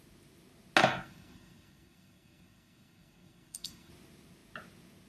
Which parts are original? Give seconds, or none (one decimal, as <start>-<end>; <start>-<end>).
0.0-0.8; 3.9-5.1